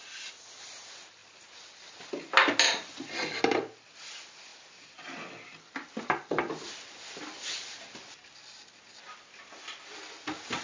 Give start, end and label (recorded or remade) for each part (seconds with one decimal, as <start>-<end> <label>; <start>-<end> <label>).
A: 0.0-10.6 recorded